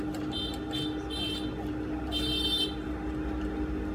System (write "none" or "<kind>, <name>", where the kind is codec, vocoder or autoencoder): none